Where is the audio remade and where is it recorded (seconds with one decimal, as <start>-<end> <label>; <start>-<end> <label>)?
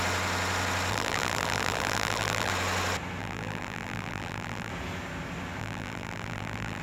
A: 0.0-0.9 recorded; 0.9-2.5 remade; 2.5-3.2 recorded; 3.2-4.7 remade; 4.7-5.6 recorded; 5.6-6.8 remade